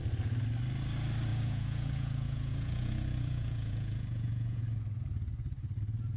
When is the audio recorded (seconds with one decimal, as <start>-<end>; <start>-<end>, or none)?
0.0-1.3; 4.6-6.2